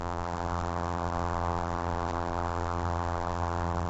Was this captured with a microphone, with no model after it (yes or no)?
no